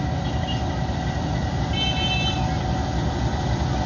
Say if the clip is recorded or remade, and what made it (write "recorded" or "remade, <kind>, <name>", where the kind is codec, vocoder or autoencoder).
recorded